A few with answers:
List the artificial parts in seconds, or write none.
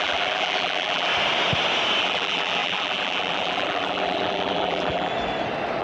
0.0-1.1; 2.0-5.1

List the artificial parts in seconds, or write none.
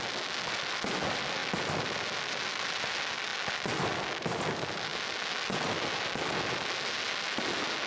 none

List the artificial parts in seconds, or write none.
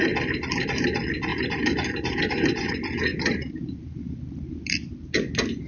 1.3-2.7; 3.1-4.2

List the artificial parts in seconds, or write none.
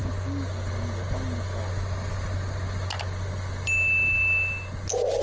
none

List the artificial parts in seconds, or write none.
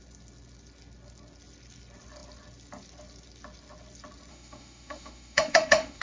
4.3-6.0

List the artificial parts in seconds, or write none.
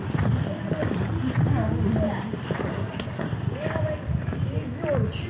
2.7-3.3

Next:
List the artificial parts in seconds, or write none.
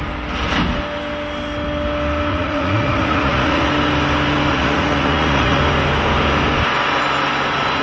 2.3-3.7; 4.5-5.6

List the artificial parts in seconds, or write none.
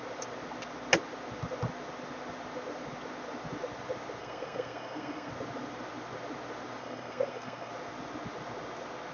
4.2-5.3; 6.8-7.7